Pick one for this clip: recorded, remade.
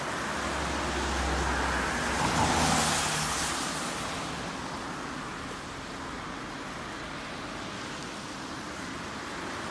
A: recorded